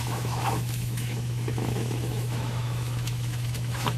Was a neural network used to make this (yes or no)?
yes